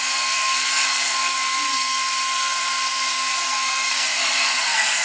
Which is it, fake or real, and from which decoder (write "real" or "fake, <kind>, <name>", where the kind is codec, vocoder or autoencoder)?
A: fake, codec, SNAC